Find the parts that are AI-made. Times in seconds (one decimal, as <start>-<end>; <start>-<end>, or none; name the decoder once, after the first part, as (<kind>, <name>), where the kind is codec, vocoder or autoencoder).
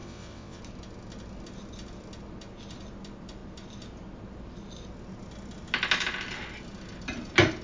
0.0-0.6 (vocoder, WaveNeXt)